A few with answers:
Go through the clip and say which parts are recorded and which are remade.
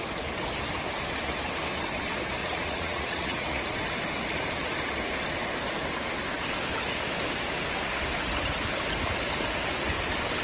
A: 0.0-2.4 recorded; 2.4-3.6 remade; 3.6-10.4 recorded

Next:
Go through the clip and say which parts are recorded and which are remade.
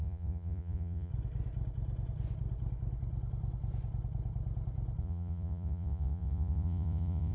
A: 0.0-1.1 remade; 1.1-5.0 recorded; 5.0-7.3 remade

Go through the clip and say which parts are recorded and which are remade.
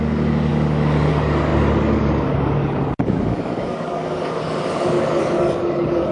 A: 0.0-6.1 remade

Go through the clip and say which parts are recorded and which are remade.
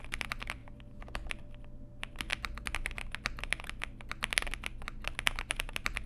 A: 0.0-6.1 recorded